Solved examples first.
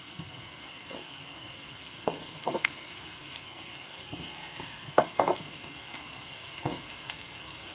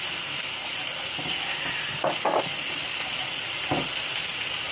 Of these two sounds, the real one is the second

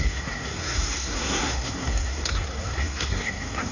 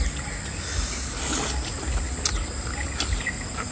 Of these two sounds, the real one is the second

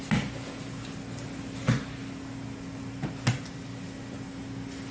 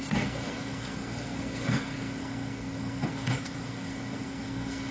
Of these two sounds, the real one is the first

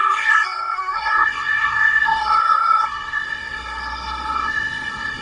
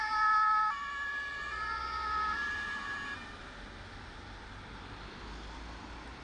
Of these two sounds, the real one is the second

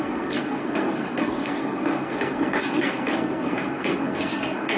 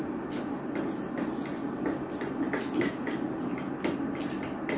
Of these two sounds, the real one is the second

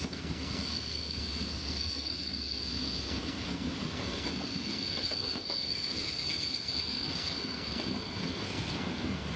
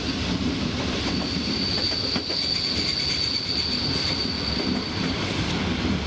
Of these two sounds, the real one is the second